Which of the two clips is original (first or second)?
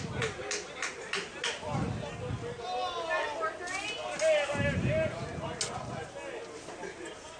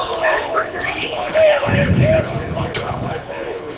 first